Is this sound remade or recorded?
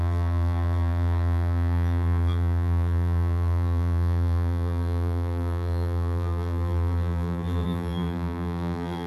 remade